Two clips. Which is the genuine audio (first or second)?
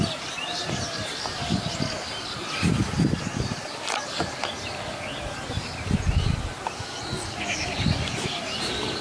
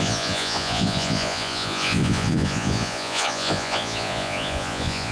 first